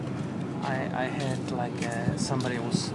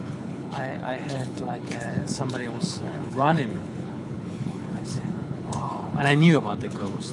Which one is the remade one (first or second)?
second